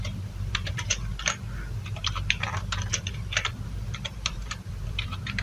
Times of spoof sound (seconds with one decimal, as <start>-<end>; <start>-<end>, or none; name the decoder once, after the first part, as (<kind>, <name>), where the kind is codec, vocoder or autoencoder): 0.0-1.1 (vocoder, BigVGAN v2); 1.9-5.4